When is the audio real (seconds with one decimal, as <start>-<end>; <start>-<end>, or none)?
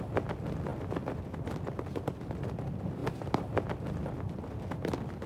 0.0-3.0; 4.0-5.3